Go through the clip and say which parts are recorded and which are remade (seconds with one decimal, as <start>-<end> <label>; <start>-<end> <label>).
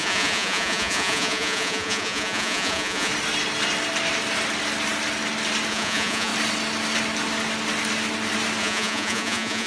0.0-3.1 remade; 3.1-5.7 recorded; 5.7-6.3 remade; 6.3-8.6 recorded; 8.6-9.7 remade